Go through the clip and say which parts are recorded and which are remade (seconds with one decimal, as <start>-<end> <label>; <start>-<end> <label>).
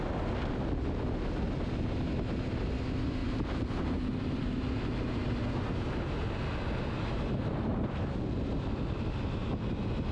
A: 0.0-3.2 recorded; 3.2-5.0 remade; 5.0-7.7 recorded; 7.7-8.4 remade; 8.4-10.1 recorded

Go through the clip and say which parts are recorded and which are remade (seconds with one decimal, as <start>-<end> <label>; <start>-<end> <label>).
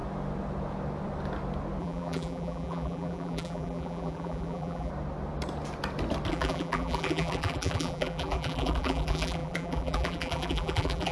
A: 0.0-1.8 recorded; 1.8-4.9 remade; 4.9-6.3 recorded; 6.3-11.1 remade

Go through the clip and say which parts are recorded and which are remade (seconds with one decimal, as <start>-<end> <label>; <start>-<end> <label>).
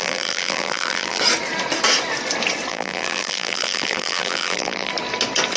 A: 0.0-1.2 remade; 1.2-2.7 recorded; 2.7-4.9 remade; 4.9-5.6 recorded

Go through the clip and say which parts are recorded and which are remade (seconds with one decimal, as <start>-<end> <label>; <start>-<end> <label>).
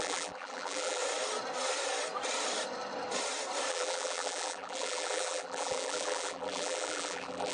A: 0.0-1.0 remade; 1.0-3.7 recorded; 3.7-7.5 remade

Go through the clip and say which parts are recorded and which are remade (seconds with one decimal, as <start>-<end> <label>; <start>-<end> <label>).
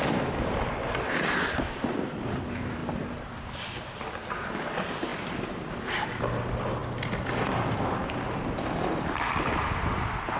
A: 0.0-10.4 remade